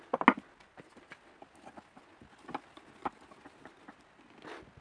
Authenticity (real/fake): real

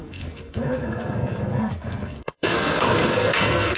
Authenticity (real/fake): fake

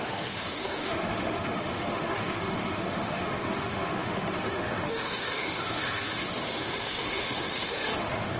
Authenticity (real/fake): fake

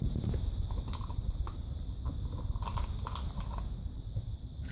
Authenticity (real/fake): real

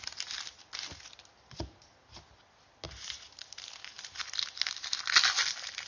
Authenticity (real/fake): real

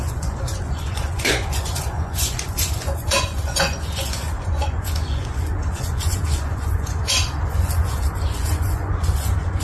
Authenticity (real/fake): fake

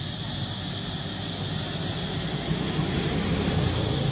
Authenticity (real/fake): real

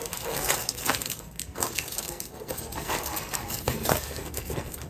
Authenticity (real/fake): fake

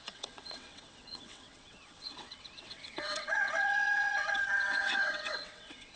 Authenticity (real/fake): fake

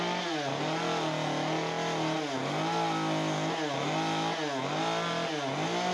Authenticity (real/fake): real